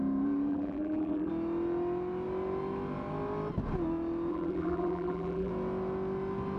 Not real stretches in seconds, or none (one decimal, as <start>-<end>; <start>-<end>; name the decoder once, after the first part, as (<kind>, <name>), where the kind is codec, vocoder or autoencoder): 0.5-1.3 (vocoder, BigVGAN v2); 4.3-5.5